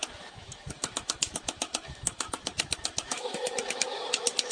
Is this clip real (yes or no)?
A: no